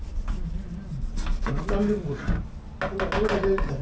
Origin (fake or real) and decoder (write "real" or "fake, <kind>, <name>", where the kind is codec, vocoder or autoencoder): real